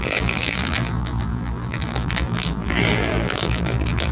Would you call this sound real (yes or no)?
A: no